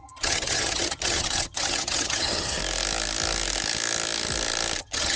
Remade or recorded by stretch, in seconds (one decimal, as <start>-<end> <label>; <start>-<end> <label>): 0.0-2.6 remade; 2.6-4.8 recorded; 4.8-5.2 remade